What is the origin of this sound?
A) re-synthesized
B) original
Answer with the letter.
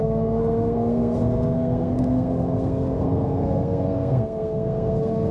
A